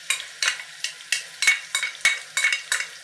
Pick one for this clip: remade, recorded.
recorded